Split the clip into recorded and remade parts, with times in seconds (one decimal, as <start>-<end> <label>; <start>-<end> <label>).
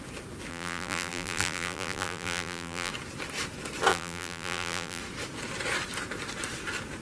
0.0-0.5 recorded; 0.5-2.9 remade; 2.9-3.9 recorded; 3.9-5.0 remade; 5.0-7.0 recorded